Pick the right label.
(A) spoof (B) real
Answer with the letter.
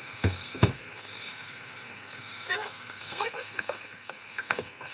A